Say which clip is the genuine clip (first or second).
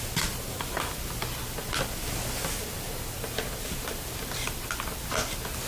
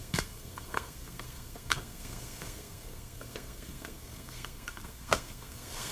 first